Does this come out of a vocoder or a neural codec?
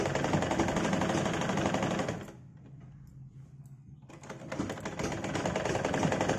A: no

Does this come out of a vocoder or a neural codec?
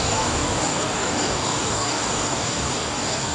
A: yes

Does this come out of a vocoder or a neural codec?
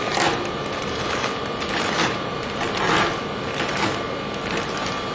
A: no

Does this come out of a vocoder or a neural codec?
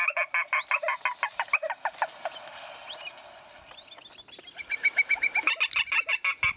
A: no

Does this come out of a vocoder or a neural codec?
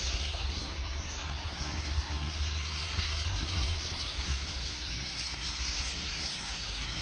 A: yes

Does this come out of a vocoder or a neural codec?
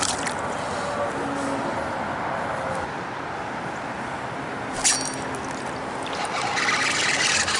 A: no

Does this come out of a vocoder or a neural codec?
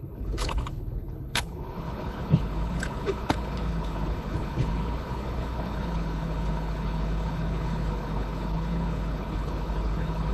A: yes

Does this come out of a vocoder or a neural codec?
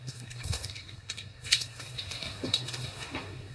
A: yes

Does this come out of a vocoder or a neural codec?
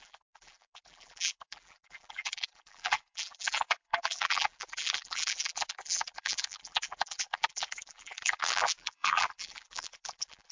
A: yes